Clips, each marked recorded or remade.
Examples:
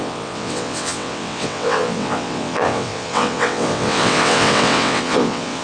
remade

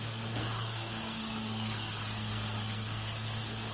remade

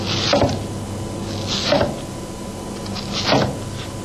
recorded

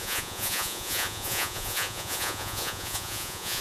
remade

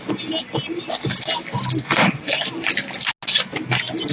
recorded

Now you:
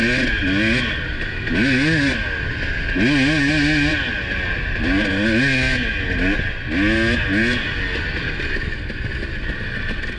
recorded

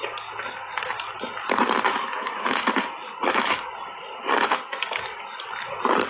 recorded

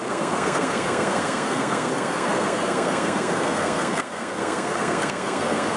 remade